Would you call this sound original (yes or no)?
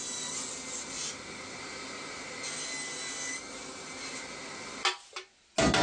yes